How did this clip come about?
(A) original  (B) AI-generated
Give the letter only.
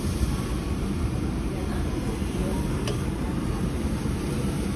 B